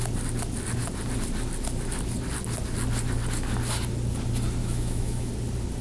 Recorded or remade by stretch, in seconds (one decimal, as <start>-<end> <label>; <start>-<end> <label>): 0.0-4.6 recorded; 4.6-5.3 remade; 5.3-5.8 recorded